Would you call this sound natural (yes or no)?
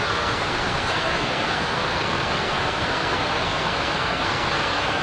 no